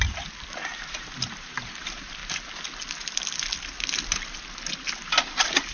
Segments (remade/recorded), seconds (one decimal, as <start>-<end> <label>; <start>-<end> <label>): 0.0-0.8 recorded; 0.8-2.2 remade; 2.2-5.7 recorded